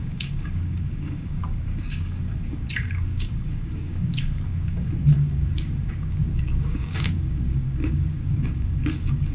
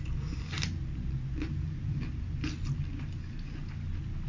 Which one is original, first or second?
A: second